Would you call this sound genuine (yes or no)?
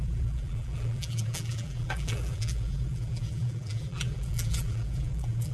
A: no